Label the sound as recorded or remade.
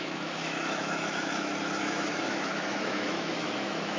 remade